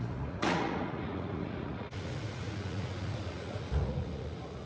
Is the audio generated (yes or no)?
yes